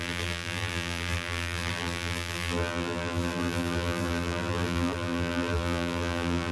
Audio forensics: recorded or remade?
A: remade